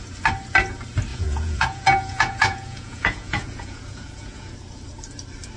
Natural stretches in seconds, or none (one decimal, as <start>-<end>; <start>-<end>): 0.0-1.1; 4.5-5.6